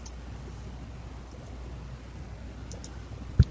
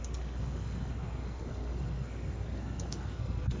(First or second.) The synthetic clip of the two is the second